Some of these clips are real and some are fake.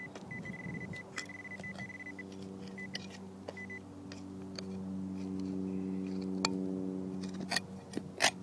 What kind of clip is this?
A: real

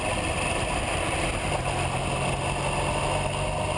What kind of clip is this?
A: real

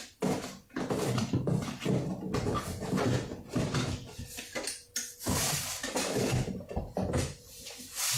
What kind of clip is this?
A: real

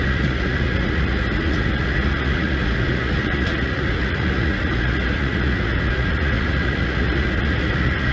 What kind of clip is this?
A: fake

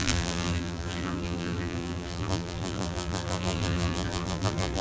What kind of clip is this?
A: fake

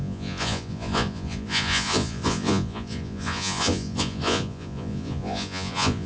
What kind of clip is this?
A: fake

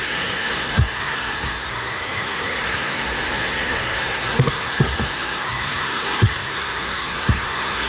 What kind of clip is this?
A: fake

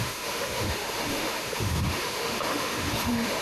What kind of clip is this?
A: fake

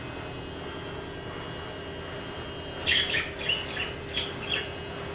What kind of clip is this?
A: real